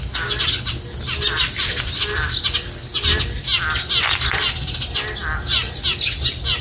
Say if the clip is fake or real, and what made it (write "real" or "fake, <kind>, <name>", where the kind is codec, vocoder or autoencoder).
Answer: real